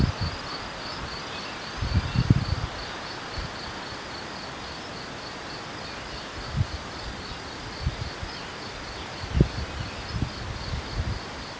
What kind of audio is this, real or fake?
real